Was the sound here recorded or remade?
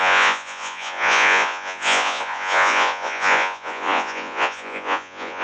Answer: remade